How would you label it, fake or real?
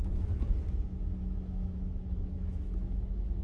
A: fake